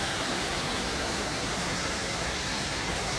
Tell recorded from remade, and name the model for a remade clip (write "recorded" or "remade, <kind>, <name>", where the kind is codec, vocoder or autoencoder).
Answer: remade, codec, SNAC